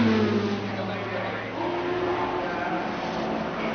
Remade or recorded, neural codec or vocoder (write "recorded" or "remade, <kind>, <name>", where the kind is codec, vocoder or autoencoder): recorded